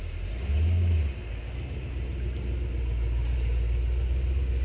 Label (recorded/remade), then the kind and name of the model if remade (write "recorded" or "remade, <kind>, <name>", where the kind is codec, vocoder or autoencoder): recorded